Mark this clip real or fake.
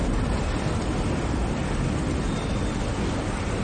real